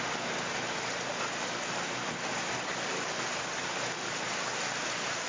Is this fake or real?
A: real